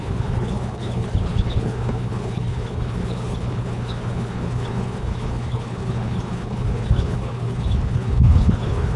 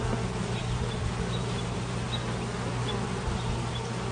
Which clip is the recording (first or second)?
second